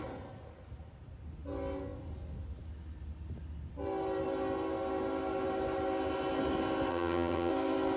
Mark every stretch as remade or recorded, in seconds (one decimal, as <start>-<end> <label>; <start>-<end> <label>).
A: 0.0-6.9 recorded; 6.9-7.5 remade; 7.5-8.0 recorded